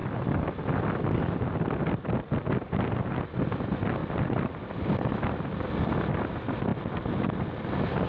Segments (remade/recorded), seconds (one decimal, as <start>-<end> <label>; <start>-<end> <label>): 0.0-4.0 recorded; 4.0-5.2 remade; 5.2-8.1 recorded